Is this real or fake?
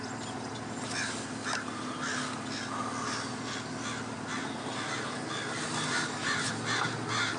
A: real